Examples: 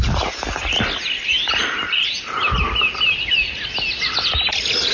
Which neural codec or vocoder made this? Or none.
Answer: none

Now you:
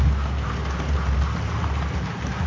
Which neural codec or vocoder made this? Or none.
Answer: none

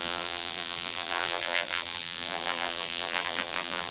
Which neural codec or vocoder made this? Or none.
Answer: vocoder, BigVGAN v2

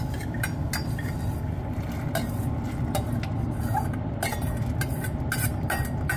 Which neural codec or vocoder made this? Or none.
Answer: none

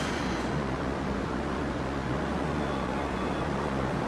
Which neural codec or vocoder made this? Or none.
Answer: vocoder, Vocos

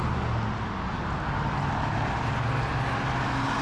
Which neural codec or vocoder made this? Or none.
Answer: none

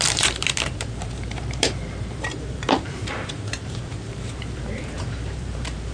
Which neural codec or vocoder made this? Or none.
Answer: vocoder, BigVGAN v2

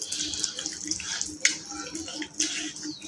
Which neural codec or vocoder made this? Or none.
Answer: none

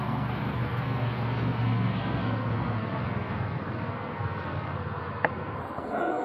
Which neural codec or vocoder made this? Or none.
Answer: codec, SNAC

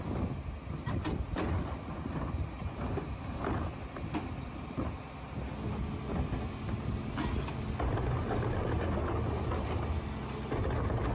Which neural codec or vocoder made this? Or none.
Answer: none